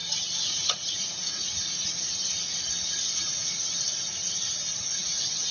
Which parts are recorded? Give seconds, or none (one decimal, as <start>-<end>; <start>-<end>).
2.6-5.5